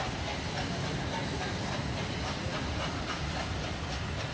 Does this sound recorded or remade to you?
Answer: recorded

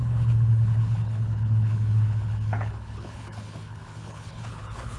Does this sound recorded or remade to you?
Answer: remade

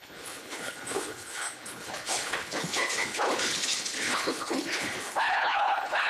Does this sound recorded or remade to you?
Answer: remade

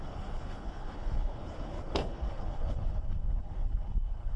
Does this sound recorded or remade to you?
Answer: remade